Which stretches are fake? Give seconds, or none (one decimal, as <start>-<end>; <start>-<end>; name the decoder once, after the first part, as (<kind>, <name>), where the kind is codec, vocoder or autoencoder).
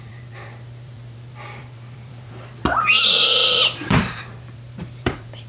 0.0-5.5 (vocoder, BigVGAN v2)